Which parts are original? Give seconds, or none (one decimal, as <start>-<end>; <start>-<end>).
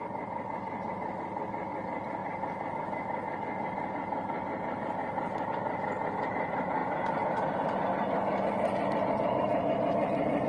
2.2-3.4; 6.8-9.1